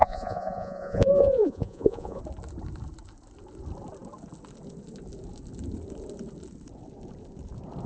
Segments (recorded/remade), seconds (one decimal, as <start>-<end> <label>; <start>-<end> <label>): 0.0-2.2 remade; 2.2-7.9 recorded